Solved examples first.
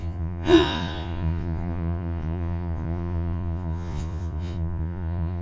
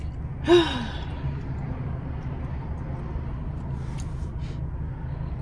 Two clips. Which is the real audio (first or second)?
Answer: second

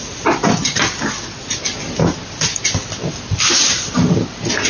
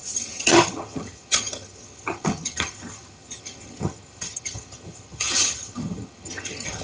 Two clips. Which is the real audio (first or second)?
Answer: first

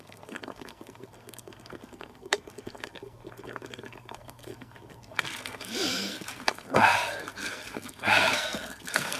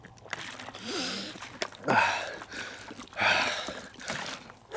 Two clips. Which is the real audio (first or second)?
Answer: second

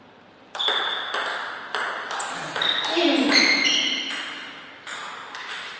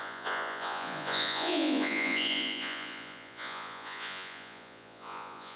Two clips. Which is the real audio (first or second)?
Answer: first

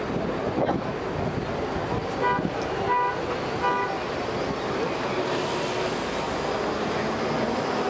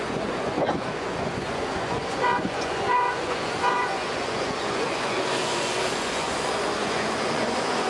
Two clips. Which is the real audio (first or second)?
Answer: first